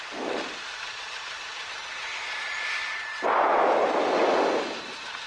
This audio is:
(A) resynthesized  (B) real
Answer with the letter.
B